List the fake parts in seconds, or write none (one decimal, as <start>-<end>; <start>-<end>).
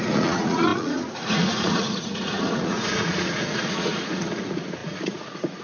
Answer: 0.0-5.6